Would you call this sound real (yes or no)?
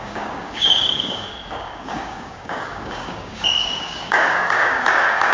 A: no